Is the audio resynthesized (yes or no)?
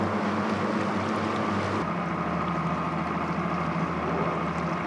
no